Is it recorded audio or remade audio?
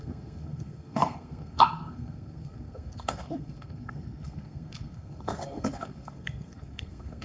remade